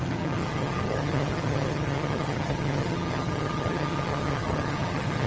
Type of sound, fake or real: fake